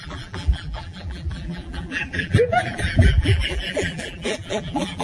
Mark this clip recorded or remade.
remade